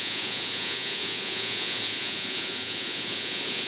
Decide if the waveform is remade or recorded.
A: remade